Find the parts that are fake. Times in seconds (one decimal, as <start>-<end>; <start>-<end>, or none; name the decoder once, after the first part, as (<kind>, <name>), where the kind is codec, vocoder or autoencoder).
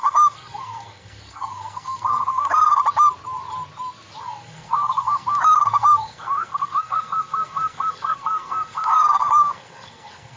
0.0-2.8 (codec, SNAC); 4.2-10.4